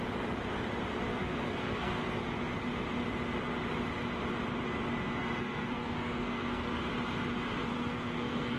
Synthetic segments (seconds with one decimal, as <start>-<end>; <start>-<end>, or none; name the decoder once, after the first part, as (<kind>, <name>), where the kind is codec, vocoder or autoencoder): 1.1-2.2 (codec, SNAC); 5.2-6.9; 7.6-8.6